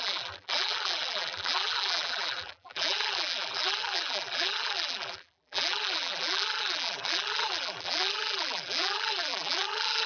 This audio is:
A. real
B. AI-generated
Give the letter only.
B